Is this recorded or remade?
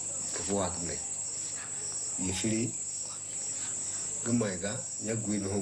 recorded